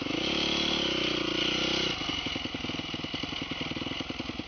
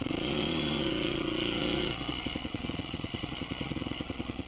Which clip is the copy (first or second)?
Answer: second